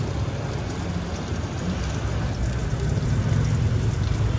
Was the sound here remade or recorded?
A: recorded